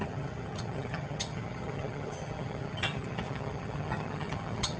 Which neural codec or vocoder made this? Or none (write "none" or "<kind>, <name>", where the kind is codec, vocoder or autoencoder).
vocoder, HiFi-GAN